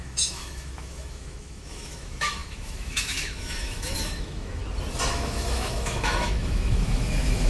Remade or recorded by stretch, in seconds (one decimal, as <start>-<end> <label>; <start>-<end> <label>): 0.0-4.6 remade; 4.6-5.1 recorded; 5.1-7.5 remade